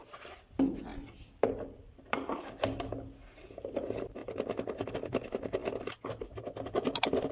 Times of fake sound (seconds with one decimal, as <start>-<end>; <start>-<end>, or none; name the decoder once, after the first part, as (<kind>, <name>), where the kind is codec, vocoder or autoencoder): 0.9-2.6 (vocoder, BigVGAN v2); 5.6-7.3